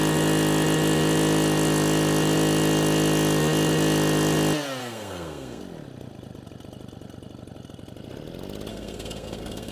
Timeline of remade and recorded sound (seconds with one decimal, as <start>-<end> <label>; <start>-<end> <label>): 0.0-4.8 recorded; 4.8-5.6 remade; 5.6-8.7 recorded; 8.7-9.7 remade